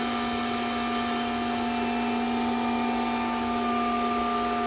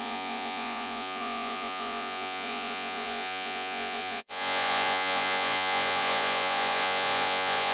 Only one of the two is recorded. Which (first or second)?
first